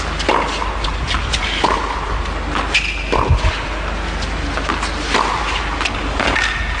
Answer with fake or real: real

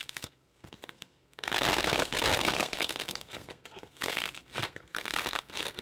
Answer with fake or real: fake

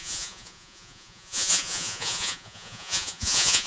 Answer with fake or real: fake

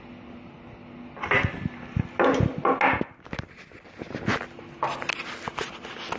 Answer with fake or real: real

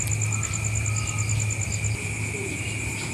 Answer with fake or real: real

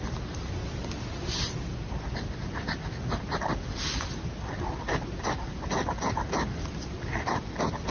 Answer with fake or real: real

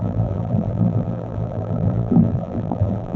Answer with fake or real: fake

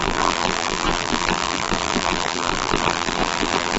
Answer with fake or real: fake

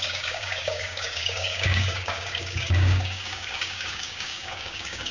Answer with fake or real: fake